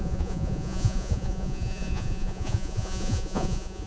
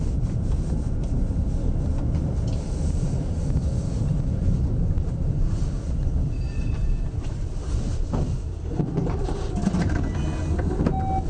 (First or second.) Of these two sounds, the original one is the second